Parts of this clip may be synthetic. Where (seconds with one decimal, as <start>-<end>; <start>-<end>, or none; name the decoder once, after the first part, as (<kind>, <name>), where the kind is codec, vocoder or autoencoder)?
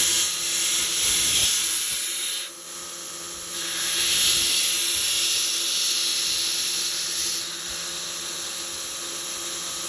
none